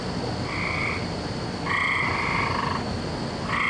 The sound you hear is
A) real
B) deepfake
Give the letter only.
A